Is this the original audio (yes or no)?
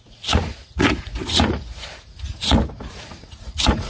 no